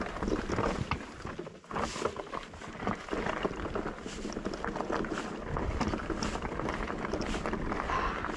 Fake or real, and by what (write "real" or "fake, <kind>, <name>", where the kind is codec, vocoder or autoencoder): real